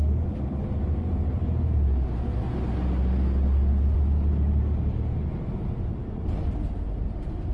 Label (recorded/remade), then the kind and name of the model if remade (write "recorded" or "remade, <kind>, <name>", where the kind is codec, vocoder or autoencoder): recorded